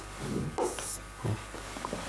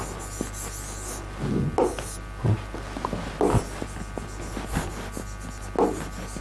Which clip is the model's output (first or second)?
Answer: first